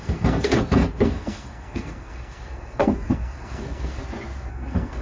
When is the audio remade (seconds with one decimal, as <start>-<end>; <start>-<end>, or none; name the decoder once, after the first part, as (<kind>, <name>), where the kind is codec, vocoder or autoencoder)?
0.0-4.0 (codec, SNAC); 4.5-5.0